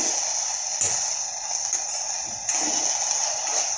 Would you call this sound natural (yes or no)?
yes